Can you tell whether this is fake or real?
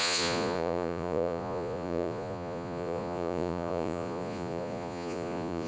fake